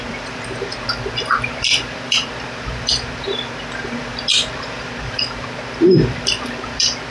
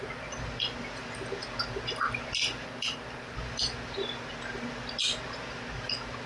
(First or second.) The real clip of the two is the second